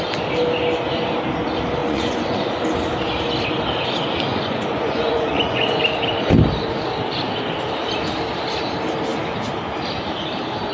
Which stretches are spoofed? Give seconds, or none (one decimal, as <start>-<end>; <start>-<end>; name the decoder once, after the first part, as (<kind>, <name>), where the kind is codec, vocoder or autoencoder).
1.8-2.5 (vocoder, Vocos); 4.3-5.8